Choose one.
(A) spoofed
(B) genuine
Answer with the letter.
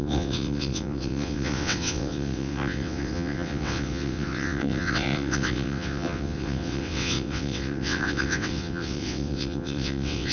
A